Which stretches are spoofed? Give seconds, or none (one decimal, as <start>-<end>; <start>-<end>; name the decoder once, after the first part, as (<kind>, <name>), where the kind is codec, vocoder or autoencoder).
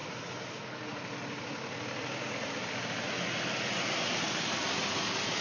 none